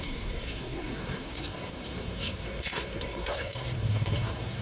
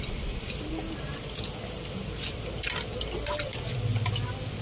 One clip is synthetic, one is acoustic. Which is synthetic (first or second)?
first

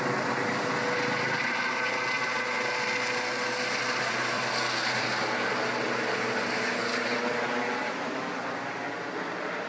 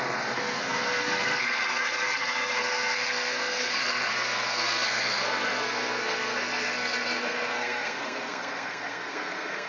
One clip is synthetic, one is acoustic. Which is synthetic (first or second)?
second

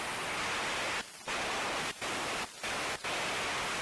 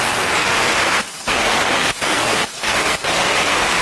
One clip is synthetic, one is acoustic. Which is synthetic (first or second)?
second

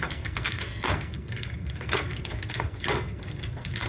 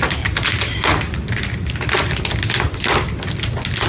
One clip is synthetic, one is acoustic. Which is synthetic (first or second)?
first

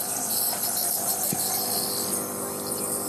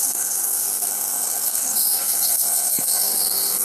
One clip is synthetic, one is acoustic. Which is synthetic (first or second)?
second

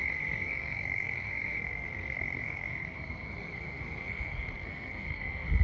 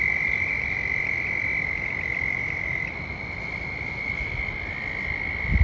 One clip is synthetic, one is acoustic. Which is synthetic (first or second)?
first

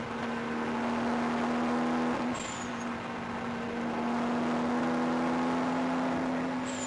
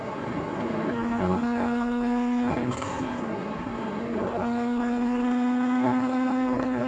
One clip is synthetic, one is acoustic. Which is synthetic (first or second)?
second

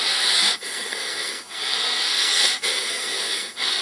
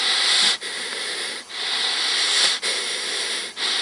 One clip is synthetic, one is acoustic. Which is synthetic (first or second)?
first